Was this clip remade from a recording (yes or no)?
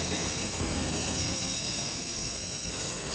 yes